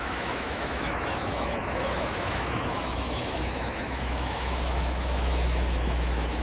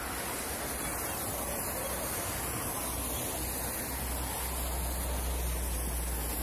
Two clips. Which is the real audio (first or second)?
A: second